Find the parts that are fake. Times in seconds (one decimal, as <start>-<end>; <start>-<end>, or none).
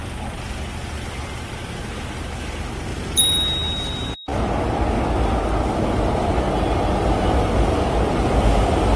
2.9-4.6